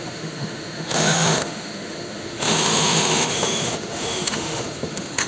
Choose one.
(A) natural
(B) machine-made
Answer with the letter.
B